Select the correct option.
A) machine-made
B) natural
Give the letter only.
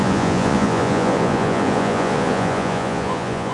A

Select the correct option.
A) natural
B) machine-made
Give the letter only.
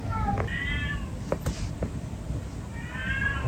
A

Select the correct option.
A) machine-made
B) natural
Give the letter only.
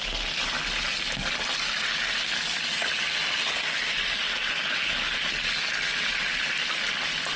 B